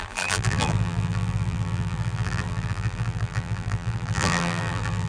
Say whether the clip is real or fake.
fake